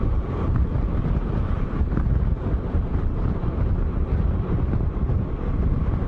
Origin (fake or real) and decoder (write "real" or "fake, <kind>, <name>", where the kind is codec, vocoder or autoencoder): real